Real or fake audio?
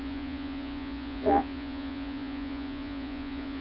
fake